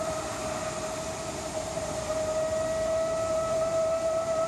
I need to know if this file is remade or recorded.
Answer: remade